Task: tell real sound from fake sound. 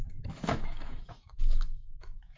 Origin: fake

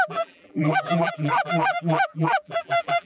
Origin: fake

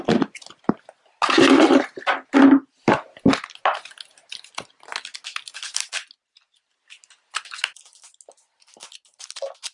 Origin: real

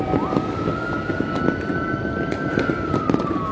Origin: real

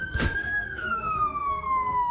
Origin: fake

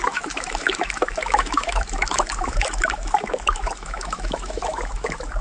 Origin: fake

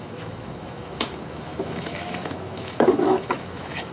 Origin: fake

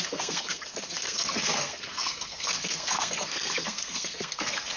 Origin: fake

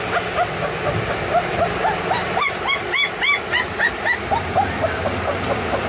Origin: real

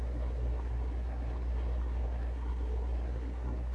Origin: fake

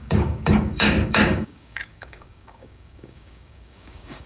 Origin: fake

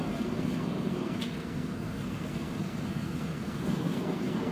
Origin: fake